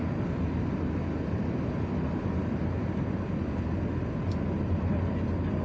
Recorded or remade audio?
recorded